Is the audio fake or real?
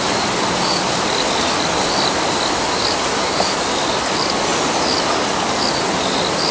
real